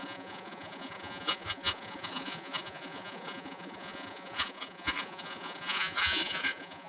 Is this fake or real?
fake